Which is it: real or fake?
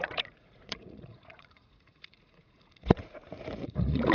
fake